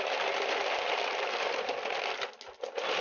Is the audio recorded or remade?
recorded